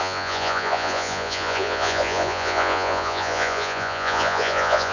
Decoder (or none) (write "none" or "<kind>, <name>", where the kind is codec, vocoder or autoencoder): vocoder, Vocos